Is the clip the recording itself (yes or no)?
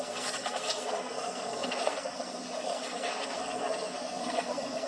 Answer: no